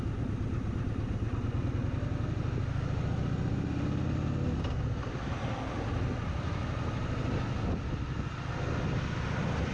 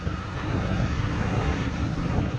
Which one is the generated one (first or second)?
second